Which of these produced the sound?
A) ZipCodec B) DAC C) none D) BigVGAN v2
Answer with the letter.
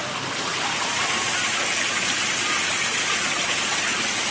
C